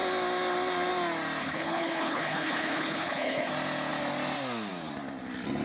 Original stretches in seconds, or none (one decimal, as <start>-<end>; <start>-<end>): 0.0-1.4; 3.5-5.6

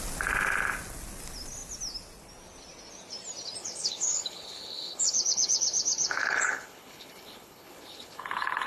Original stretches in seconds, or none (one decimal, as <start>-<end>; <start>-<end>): 0.0-3.6

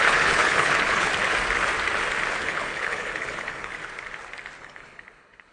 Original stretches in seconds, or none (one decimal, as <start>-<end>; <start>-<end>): 1.1-2.4; 3.7-4.6

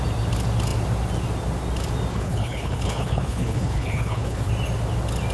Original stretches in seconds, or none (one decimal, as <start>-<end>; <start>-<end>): 0.0-2.1; 4.5-5.3

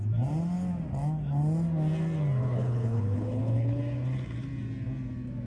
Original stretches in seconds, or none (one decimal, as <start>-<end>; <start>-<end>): 0.0-2.4; 3.8-5.5

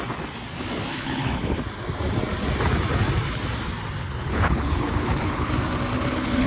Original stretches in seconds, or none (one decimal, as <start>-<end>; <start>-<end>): 0.0-0.9; 1.6-4.0; 5.5-5.9